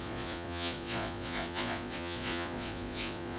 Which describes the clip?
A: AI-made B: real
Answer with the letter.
A